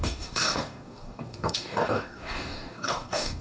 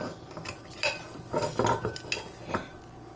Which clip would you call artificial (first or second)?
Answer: first